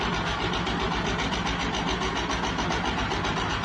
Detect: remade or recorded recorded